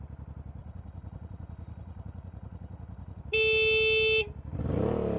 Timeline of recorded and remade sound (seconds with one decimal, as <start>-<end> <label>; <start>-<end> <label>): 0.0-0.6 recorded; 0.6-3.2 remade; 3.2-5.2 recorded